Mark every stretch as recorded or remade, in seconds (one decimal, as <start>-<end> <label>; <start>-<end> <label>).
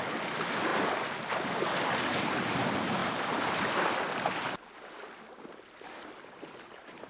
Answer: 0.0-7.1 recorded